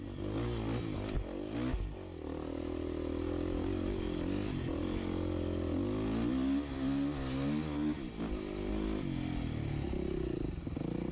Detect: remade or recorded recorded